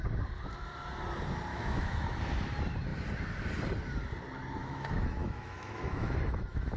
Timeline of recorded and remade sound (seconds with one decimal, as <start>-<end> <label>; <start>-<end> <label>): 0.0-1.5 recorded; 1.5-2.2 remade; 2.2-4.6 recorded; 4.6-6.8 remade

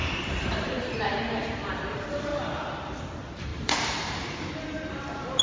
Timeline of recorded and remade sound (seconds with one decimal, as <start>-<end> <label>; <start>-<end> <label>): 0.0-1.7 remade; 1.7-3.5 recorded; 3.5-4.5 remade; 4.5-5.4 recorded

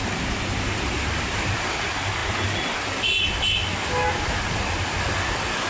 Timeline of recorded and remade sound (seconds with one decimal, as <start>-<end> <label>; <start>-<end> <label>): 0.0-5.7 recorded

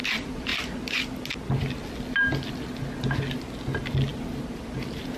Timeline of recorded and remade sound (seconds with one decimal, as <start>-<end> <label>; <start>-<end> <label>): 0.0-5.2 recorded

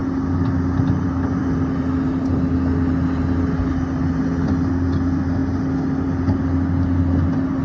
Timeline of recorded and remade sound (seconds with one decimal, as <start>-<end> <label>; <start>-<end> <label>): 0.0-7.6 recorded

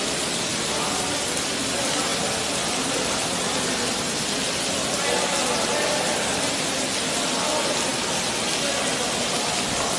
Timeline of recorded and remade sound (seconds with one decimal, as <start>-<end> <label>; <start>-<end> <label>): 0.0-10.0 recorded

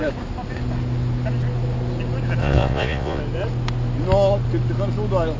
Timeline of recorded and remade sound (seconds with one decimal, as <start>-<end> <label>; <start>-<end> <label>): 0.0-2.4 recorded; 2.4-3.2 remade; 3.2-5.4 recorded

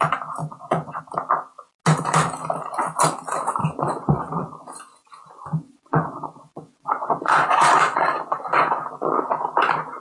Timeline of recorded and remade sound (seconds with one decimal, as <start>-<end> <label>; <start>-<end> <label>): 0.0-0.4 recorded; 0.4-1.0 remade; 1.0-3.6 recorded; 3.6-8.9 remade; 8.9-10.0 recorded